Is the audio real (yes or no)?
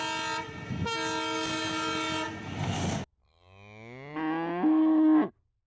yes